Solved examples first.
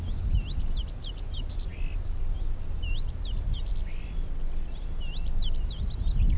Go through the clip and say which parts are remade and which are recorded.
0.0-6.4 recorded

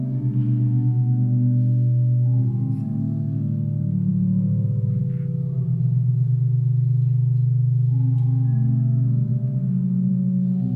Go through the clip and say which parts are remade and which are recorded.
0.0-10.8 recorded

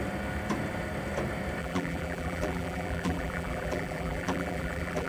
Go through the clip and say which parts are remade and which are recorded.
0.0-1.6 recorded; 1.6-5.1 remade

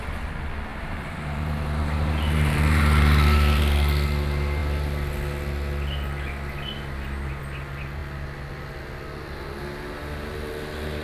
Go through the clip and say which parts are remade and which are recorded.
0.0-0.7 recorded; 0.7-3.6 remade; 3.6-11.0 recorded

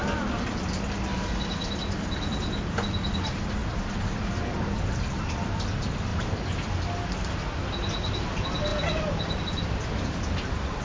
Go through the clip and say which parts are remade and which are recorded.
0.0-3.6 recorded; 3.6-5.1 remade; 5.1-6.1 recorded; 6.1-6.7 remade; 6.7-8.7 recorded; 8.7-9.4 remade; 9.4-10.8 recorded

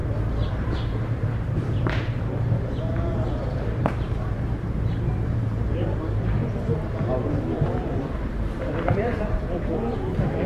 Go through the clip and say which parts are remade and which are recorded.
0.0-0.5 recorded; 0.5-6.4 remade; 6.4-7.3 recorded; 7.3-10.5 remade